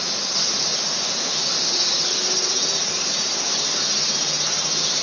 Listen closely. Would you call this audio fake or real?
real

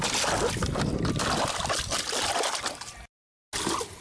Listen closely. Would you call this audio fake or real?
real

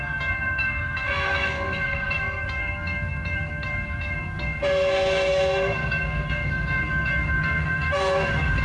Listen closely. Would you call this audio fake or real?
fake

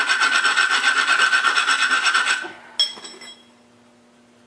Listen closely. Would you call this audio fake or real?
real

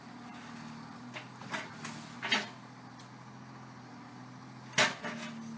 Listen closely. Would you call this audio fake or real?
real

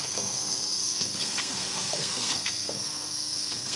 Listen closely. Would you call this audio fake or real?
fake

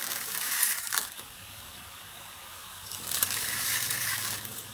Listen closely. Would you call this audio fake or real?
fake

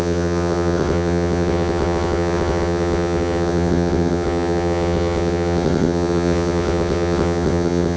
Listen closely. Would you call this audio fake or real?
fake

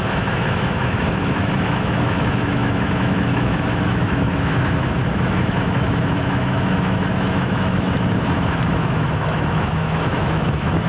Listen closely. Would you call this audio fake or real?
fake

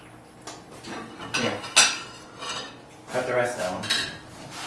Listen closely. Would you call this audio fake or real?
real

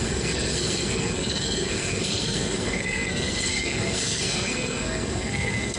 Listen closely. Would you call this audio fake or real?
fake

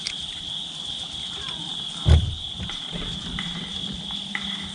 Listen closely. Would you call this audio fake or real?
real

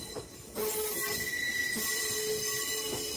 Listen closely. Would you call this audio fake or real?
real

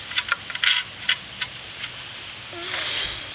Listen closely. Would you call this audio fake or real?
real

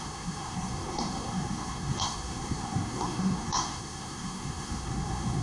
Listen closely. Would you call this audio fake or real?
fake